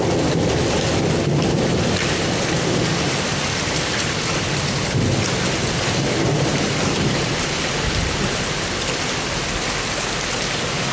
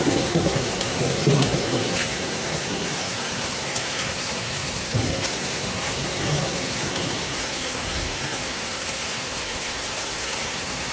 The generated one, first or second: second